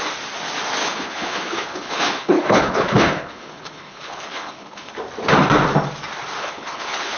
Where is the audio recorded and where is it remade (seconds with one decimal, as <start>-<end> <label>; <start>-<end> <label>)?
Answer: 0.0-0.8 recorded; 0.8-4.9 remade; 4.9-6.4 recorded; 6.4-7.2 remade

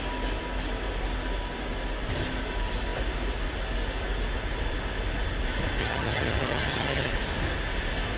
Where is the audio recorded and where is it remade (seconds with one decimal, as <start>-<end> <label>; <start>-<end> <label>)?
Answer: 0.0-5.8 recorded; 5.8-7.1 remade; 7.1-8.2 recorded

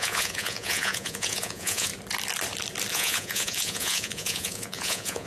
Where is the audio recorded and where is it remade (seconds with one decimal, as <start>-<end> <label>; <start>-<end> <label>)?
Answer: 0.0-1.9 remade; 1.9-2.9 recorded; 2.9-5.3 remade

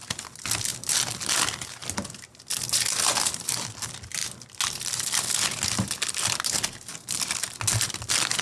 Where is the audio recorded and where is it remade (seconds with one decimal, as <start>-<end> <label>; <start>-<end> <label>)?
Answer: 0.0-8.4 recorded

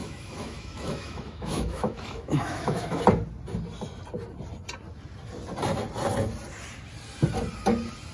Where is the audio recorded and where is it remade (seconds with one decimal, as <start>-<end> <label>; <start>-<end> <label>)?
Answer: 0.0-3.0 remade; 3.0-8.1 recorded

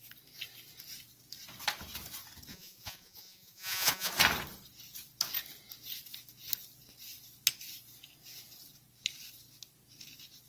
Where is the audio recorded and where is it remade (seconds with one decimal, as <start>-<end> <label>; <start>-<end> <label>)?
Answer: 0.0-2.5 recorded; 2.5-4.1 remade; 4.1-10.5 recorded

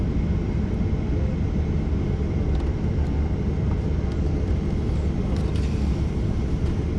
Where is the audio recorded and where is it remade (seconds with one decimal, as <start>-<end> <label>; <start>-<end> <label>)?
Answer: 0.0-7.0 recorded

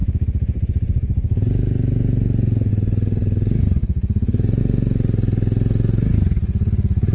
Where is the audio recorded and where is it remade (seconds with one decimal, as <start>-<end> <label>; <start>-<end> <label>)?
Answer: 0.0-2.7 remade; 2.7-3.8 recorded; 3.8-4.6 remade; 4.6-7.1 recorded